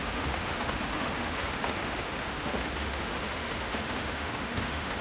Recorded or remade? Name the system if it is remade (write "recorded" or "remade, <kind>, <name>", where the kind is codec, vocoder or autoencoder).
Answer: remade, autoencoder, DAC-VAE